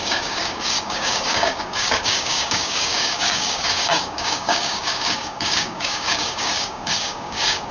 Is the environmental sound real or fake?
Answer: fake